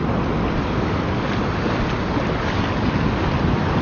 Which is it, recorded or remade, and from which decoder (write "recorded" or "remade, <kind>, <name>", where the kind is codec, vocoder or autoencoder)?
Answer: recorded